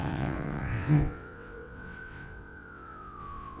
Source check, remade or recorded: remade